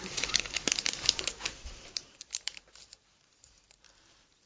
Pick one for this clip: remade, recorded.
remade